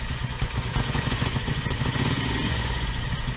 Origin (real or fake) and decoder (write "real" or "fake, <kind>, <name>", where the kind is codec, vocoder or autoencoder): fake, vocoder, Vocos